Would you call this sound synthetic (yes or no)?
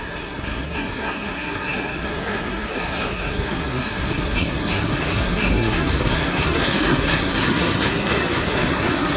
yes